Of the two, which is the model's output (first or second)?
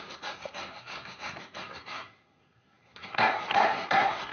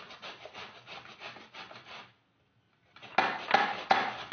first